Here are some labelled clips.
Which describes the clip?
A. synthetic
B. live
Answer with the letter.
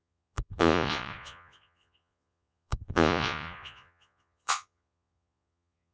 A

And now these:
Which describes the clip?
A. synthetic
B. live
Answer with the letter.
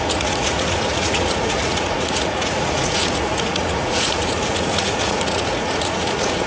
A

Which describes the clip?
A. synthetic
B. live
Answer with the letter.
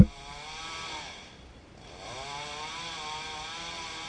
B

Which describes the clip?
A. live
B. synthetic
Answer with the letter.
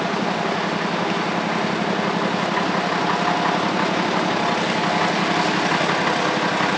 A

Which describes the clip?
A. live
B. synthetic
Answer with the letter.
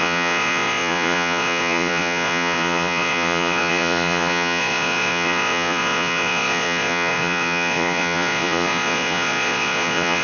B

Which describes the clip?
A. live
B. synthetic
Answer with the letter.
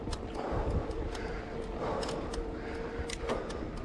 A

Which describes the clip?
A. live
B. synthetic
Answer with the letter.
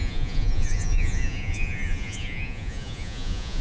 B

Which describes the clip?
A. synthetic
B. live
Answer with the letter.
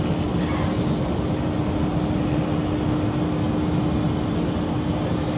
B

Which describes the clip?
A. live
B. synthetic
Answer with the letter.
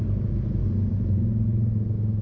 A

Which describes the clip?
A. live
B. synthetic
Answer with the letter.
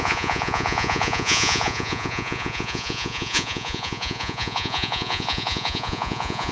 B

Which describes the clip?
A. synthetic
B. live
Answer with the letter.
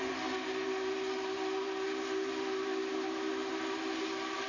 B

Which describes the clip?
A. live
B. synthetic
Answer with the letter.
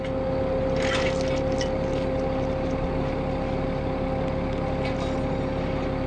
A